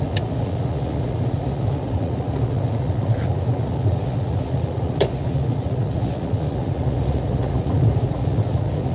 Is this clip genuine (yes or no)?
no